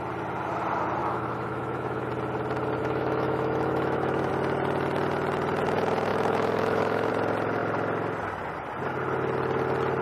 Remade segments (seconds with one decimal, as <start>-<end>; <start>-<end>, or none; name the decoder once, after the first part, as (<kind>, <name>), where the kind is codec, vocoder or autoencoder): 1.0-2.1 (autoencoder, DAC-VAE); 2.8-4.3; 6.1-7.1